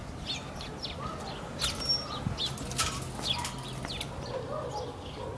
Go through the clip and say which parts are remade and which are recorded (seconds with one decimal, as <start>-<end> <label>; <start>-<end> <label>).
0.0-5.4 recorded